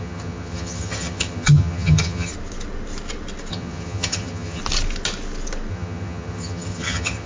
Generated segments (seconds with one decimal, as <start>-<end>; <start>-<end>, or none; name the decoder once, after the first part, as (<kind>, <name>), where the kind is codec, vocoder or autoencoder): 0.0-2.3 (vocoder, HiFi-GAN); 3.5-4.6; 5.7-7.3